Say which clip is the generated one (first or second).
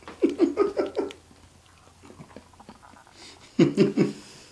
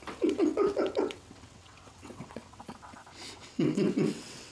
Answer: second